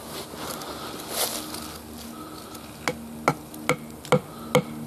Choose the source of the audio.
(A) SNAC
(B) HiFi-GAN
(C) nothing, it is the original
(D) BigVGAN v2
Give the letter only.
C